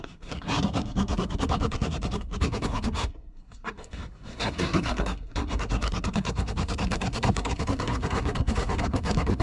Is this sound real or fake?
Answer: fake